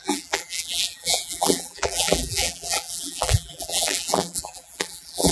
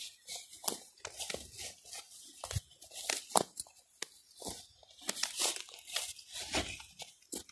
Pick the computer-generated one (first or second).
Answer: first